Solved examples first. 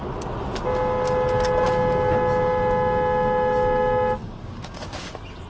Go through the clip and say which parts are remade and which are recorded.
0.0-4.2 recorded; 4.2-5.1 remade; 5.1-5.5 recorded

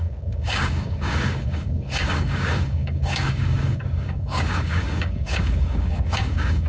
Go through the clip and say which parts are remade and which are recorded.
0.0-6.7 remade